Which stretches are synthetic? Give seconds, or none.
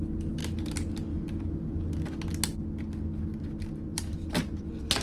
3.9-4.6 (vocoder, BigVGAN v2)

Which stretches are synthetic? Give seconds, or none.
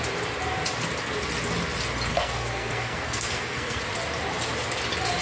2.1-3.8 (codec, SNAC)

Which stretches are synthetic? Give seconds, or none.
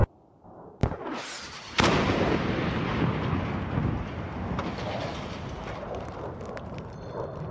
none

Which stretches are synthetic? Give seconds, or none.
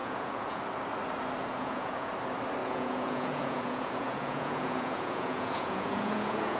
0.0-0.6 (vocoder, Vocos); 1.4-2.1; 2.6-6.6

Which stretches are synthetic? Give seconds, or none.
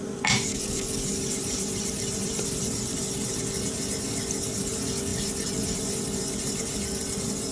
0.5-3.3 (vocoder, BigVGAN v2)